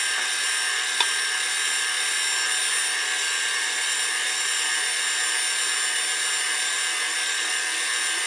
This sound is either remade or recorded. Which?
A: recorded